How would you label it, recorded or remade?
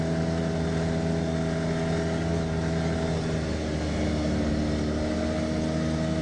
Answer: recorded